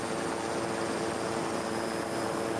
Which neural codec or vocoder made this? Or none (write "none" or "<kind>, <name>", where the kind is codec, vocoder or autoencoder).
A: none